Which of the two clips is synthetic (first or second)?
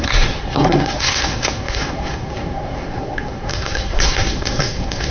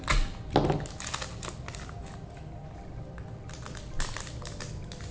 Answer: first